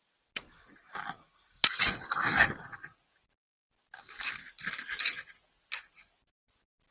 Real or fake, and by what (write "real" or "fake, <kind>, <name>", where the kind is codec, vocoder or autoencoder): real